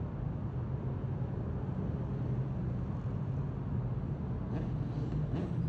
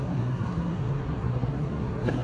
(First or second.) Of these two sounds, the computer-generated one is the second